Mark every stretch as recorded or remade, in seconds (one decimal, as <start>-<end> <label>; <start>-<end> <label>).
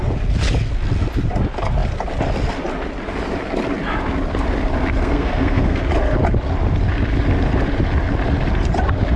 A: 0.0-5.0 recorded; 5.0-5.8 remade; 5.8-9.2 recorded